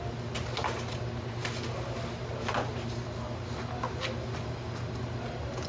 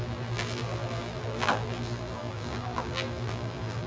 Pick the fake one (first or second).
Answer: second